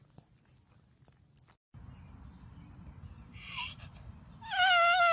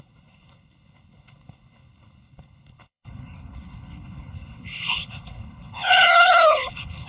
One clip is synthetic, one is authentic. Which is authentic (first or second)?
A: first